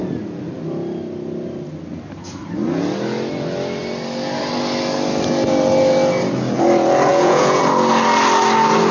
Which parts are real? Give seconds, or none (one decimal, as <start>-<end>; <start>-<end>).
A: 0.0-7.1; 7.6-8.9